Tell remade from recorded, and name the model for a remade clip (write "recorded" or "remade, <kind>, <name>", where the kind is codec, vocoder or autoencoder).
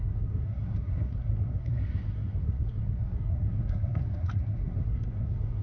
remade, codec, SNAC